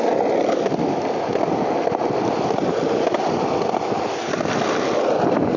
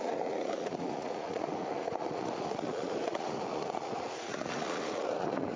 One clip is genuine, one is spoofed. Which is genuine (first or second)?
first